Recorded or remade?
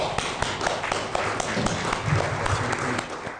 recorded